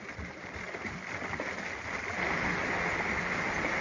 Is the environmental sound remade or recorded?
recorded